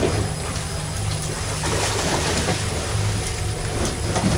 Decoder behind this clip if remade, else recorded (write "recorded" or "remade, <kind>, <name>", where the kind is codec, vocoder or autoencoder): recorded